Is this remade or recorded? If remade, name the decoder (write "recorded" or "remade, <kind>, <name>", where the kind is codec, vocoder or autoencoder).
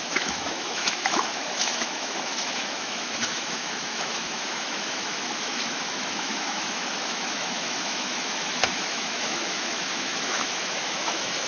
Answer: remade, autoencoder, DAC-VAE